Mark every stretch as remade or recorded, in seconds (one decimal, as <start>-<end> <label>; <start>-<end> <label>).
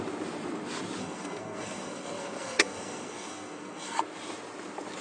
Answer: 0.0-1.0 recorded; 1.0-4.0 remade; 4.0-5.0 recorded